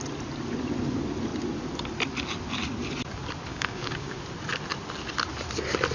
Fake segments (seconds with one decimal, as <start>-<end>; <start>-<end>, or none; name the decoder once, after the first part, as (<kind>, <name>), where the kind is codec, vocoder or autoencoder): 3.5-4.2 (codec, DAC)